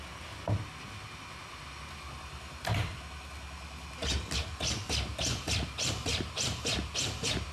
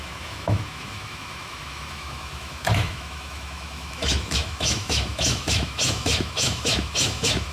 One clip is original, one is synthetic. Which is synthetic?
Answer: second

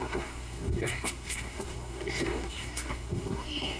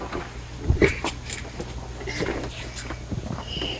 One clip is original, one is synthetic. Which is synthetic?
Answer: first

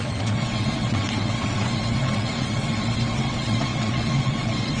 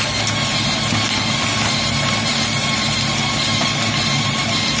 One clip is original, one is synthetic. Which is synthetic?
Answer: first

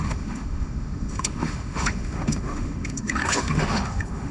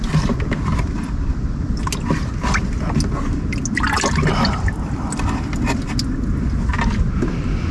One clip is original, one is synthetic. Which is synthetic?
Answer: first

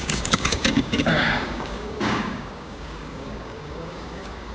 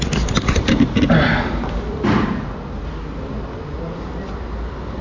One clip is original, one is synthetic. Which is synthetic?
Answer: first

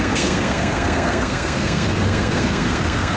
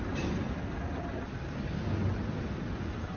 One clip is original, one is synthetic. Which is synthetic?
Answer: first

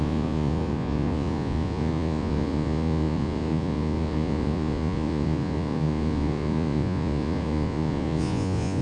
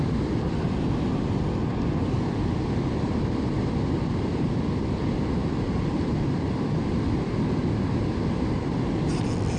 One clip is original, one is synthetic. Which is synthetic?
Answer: first